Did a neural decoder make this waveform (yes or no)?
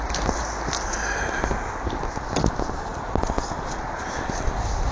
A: no